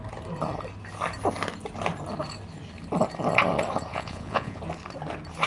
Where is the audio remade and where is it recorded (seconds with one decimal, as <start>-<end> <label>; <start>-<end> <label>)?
0.0-3.9 recorded; 3.9-4.6 remade; 4.6-5.5 recorded